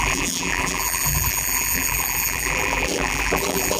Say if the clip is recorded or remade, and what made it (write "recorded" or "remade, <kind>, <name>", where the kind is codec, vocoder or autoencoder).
remade, vocoder, BigVGAN v2